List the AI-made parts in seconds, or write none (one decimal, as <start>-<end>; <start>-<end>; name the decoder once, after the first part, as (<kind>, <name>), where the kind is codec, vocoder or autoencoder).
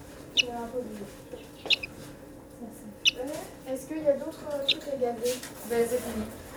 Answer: none